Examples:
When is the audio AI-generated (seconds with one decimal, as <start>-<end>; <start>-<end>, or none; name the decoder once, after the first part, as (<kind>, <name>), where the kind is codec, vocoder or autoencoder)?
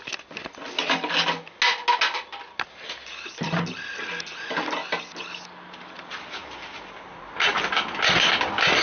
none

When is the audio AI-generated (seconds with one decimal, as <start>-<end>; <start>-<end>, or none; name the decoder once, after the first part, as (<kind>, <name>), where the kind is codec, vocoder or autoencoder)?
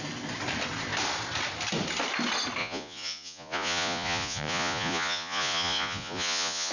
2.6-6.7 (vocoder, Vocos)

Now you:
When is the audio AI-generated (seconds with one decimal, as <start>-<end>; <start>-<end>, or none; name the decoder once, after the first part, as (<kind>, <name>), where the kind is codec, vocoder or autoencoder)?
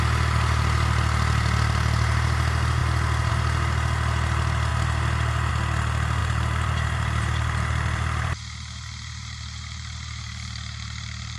6.2-11.4 (vocoder, BigVGAN v2)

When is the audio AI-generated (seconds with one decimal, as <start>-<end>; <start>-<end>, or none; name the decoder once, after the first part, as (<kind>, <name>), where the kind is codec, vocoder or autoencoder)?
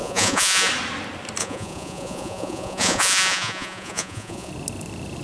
0.0-0.7 (vocoder, Vocos); 1.4-4.5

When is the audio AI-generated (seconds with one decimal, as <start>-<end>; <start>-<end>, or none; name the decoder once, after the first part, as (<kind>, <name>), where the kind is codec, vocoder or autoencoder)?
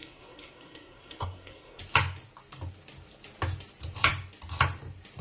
0.0-1.8 (codec, SNAC)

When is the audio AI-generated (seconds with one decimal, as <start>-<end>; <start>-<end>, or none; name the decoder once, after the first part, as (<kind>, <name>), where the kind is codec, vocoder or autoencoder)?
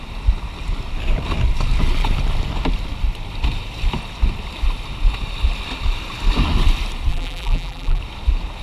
7.1-8.0 (vocoder, BigVGAN v2)